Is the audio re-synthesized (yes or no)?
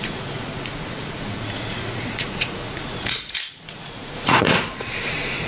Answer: yes